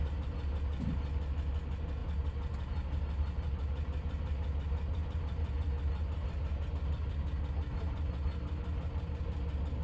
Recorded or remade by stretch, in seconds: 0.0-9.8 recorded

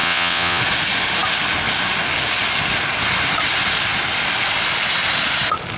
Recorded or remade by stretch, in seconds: 0.0-0.6 remade; 0.6-5.8 recorded

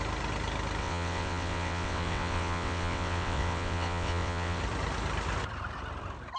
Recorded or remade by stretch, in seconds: 0.0-0.8 recorded; 0.8-4.6 remade; 4.6-6.4 recorded

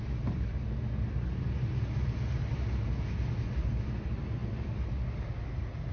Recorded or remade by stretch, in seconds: 0.0-5.9 recorded

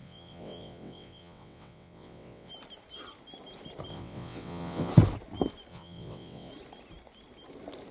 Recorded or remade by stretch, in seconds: 0.0-2.5 remade; 2.5-3.9 recorded; 3.9-4.9 remade; 4.9-5.7 recorded; 5.7-6.5 remade; 6.5-7.9 recorded